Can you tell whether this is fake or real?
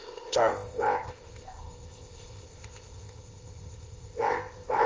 fake